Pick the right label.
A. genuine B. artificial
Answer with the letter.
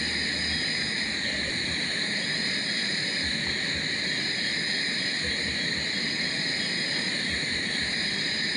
A